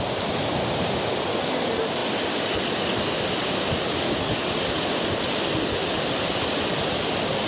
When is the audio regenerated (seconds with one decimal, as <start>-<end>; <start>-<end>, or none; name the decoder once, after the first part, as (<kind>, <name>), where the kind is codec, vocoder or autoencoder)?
none